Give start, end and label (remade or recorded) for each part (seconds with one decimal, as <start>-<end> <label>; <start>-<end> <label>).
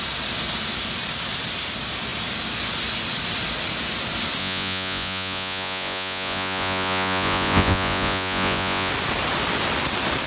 0.0-4.4 recorded; 4.4-8.9 remade; 8.9-10.3 recorded